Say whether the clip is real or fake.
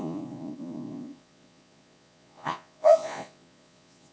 fake